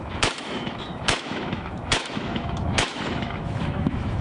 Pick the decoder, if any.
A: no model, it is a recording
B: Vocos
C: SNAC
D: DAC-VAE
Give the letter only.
D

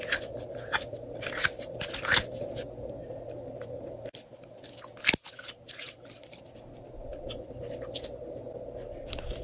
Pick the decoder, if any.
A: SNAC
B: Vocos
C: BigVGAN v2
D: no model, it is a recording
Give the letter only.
D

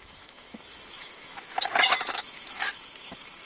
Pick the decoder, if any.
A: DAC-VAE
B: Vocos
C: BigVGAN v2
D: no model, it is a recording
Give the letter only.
A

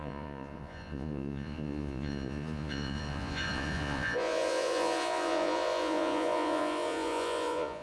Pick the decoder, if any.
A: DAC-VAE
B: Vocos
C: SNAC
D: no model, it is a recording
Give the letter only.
B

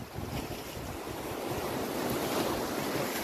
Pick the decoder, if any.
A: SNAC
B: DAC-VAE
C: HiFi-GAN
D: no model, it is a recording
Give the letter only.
D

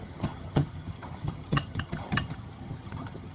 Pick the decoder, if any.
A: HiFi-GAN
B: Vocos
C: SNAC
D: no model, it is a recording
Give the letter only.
A